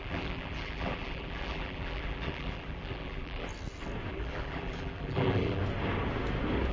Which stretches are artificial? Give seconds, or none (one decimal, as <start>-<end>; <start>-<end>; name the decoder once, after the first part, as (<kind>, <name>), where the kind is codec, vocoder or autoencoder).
0.0-3.5 (vocoder, BigVGAN v2); 4.1-5.6